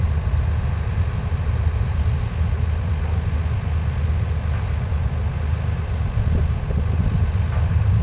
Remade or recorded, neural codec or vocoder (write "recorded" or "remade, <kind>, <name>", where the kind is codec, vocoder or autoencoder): recorded